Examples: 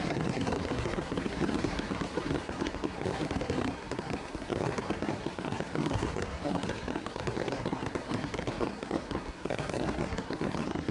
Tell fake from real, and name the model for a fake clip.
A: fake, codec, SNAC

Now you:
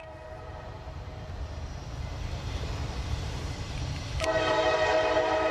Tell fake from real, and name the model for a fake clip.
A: fake, vocoder, BigVGAN v2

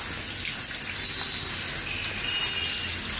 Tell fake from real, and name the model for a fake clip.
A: real